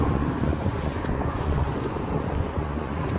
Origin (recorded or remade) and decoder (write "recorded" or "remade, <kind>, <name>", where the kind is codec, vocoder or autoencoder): remade, vocoder, Vocos